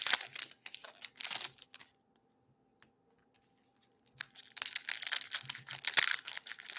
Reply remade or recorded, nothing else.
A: recorded